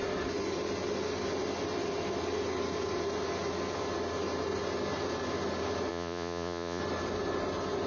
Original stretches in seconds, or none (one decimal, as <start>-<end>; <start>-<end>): 0.0-5.9; 6.8-7.9